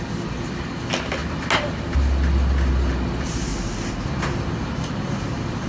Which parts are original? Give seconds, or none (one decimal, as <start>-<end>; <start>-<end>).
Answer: 0.0-5.7